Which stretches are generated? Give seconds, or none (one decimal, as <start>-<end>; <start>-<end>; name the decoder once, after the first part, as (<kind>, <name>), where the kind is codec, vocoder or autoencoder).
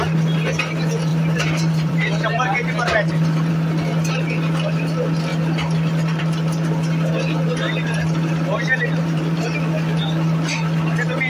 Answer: 1.1-3.5 (vocoder, BigVGAN v2); 8.3-9.4